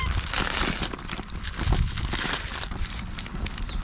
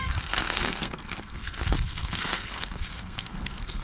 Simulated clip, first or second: second